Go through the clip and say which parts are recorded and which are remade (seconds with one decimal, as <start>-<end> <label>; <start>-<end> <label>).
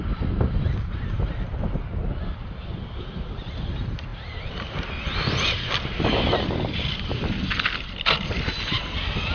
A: 0.0-9.3 recorded